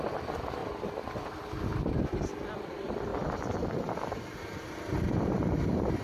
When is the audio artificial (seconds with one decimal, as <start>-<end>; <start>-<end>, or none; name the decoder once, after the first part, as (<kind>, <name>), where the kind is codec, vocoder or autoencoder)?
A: 0.0-0.6 (vocoder, BigVGAN v2); 2.7-3.1; 4.4-6.0